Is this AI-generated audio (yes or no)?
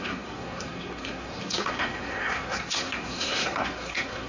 yes